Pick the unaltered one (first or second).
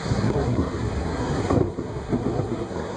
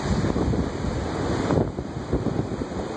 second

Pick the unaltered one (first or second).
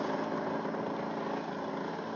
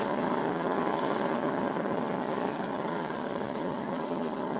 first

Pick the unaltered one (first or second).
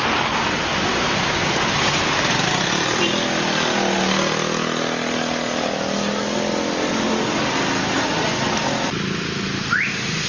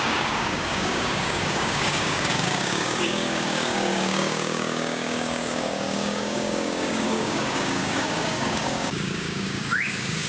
first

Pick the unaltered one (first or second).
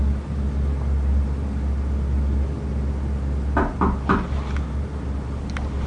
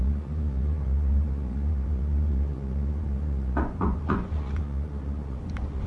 first